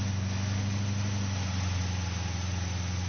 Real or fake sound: real